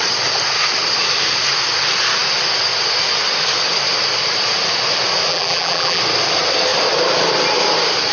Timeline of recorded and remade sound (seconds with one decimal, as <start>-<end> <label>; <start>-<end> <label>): 0.0-5.3 recorded; 5.3-6.0 remade; 6.0-8.1 recorded